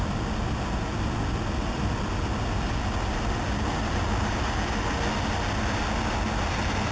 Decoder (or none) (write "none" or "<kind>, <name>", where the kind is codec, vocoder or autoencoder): none